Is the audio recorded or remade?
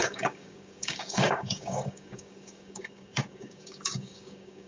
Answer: remade